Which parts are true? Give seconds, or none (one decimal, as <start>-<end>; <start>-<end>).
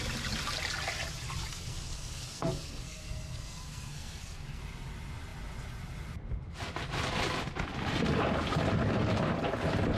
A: 0.0-1.5; 4.6-10.0